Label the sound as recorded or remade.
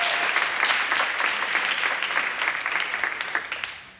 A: recorded